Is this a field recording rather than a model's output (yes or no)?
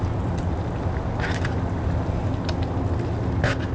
yes